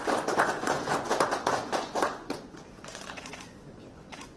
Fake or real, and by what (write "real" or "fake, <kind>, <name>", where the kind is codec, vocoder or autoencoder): fake, vocoder, Vocos